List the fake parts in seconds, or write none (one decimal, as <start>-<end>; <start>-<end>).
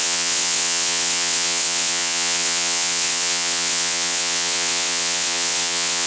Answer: 0.0-6.1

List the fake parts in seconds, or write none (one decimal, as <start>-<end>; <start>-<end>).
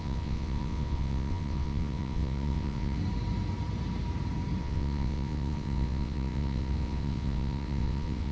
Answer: 0.0-3.0; 4.6-8.3